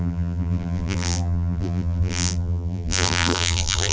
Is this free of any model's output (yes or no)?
no